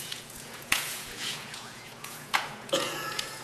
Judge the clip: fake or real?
fake